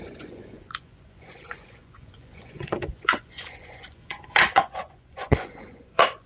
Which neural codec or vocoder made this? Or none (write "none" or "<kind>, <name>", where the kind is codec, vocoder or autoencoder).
vocoder, Vocos